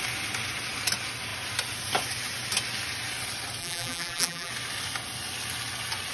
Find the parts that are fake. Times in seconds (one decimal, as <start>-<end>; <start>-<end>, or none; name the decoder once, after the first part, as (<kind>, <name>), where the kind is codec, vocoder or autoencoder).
3.6-4.5 (vocoder, BigVGAN v2)